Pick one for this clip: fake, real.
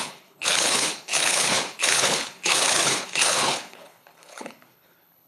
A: fake